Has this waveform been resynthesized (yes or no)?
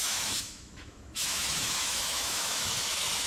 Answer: yes